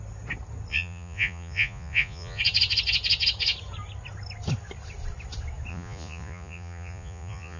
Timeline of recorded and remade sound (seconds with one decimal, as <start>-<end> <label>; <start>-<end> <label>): 0.0-0.7 recorded; 0.7-2.4 remade; 2.4-5.7 recorded; 5.7-7.6 remade